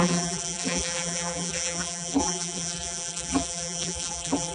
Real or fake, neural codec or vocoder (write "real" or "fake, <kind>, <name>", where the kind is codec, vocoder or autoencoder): fake, vocoder, BigVGAN v2